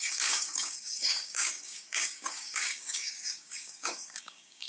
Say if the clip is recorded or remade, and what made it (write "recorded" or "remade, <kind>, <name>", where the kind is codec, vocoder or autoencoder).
remade, codec, DAC